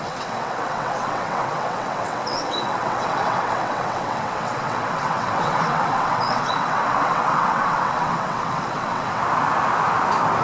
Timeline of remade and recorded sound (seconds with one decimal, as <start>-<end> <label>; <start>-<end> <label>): 0.0-9.2 remade; 9.2-10.4 recorded